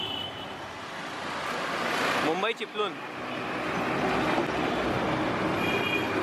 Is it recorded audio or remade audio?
recorded